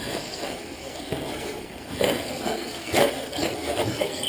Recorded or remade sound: remade